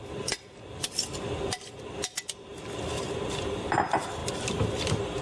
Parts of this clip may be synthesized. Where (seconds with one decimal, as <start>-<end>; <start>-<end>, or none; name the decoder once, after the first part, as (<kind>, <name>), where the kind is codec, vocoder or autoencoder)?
none